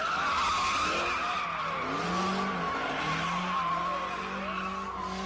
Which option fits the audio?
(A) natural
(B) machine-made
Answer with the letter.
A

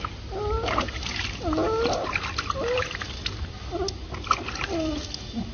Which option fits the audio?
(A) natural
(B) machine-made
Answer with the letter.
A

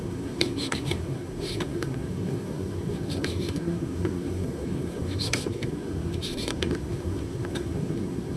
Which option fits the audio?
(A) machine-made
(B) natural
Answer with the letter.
A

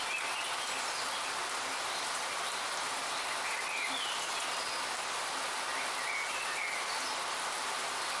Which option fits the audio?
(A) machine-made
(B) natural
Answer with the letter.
B